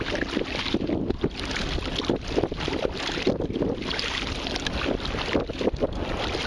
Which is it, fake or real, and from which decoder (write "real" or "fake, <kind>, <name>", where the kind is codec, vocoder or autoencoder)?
real